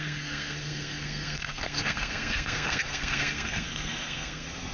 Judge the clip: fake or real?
fake